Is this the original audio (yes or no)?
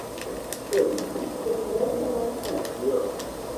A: yes